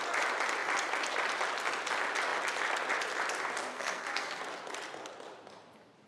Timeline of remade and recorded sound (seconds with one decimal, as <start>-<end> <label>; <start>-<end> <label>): 0.0-3.7 recorded; 3.7-4.4 remade; 4.4-6.1 recorded